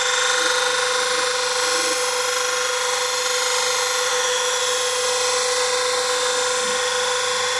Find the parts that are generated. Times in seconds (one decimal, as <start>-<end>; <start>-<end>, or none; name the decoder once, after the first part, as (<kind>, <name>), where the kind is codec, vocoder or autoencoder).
4.1-4.6 (autoencoder, DAC-VAE)